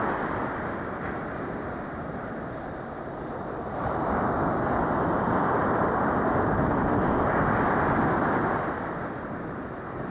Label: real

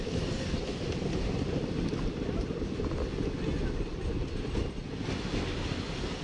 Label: real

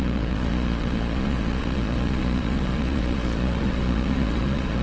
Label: fake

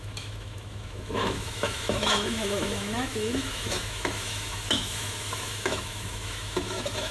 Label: fake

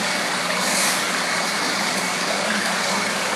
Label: fake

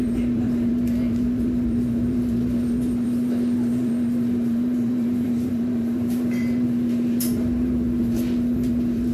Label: fake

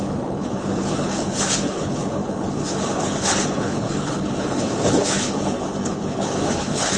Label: fake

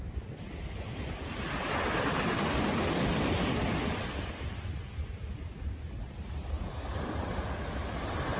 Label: real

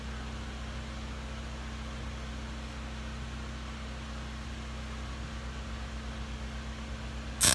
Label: real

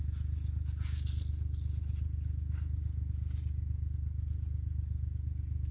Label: real